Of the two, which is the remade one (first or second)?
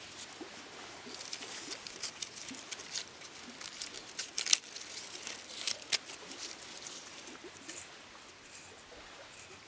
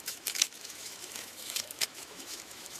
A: second